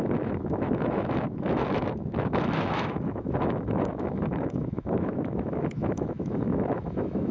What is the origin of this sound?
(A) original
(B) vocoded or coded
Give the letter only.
B